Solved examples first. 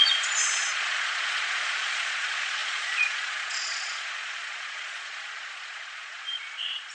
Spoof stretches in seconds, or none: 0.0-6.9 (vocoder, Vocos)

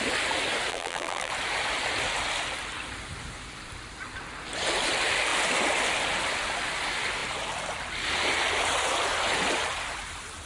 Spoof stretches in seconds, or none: 0.7-1.3 (vocoder, BigVGAN v2)

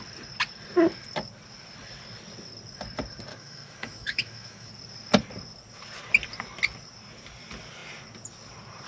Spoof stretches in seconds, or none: 3.3-4.7 (autoencoder, DAC-VAE)

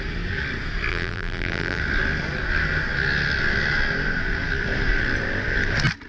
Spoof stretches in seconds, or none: 0.9-1.8 (vocoder, BigVGAN v2)

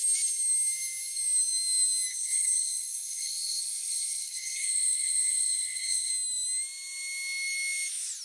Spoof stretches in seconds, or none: 2.1-6.1 (codec, HILCodec)

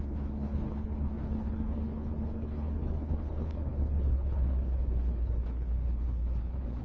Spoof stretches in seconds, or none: 0.0-6.8 (codec, HILCodec)